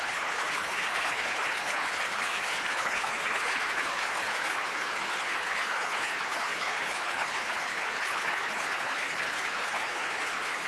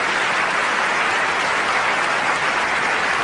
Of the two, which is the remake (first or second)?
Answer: first